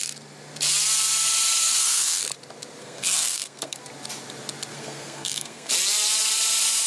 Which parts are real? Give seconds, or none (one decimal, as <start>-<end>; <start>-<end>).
0.0-1.6; 2.2-2.8; 3.8-4.7; 5.7-6.9